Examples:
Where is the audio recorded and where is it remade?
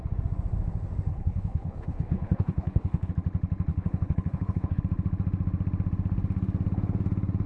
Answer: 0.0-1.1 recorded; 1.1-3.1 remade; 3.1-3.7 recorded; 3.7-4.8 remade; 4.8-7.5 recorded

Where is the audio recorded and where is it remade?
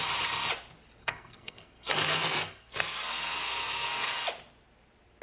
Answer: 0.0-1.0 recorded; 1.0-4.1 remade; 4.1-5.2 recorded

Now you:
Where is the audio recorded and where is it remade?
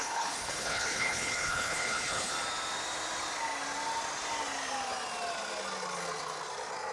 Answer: 0.0-2.3 remade; 2.3-6.9 recorded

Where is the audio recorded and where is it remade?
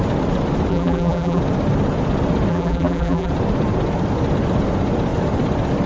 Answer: 0.0-0.7 recorded; 0.7-1.4 remade; 1.4-2.5 recorded; 2.5-3.3 remade; 3.3-5.9 recorded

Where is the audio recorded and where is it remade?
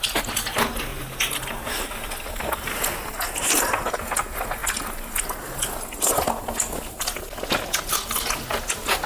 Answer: 0.0-9.1 recorded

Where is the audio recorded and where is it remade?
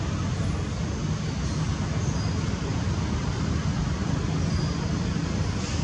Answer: 0.0-5.8 recorded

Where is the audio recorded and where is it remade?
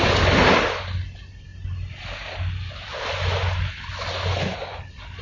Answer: 0.0-5.2 recorded